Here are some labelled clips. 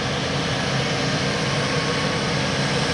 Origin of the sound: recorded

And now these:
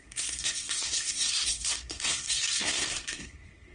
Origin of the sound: remade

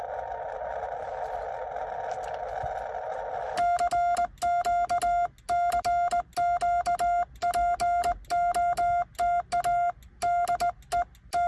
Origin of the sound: recorded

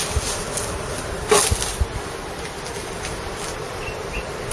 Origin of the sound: recorded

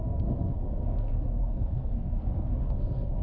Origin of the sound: remade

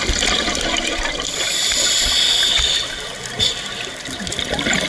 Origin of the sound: recorded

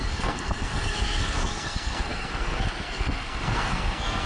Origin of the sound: remade